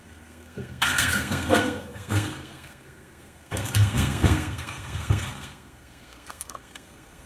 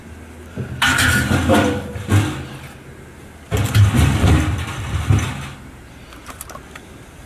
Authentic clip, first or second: second